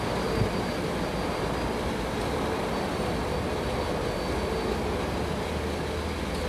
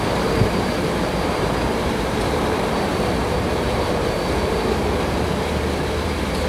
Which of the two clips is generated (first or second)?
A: second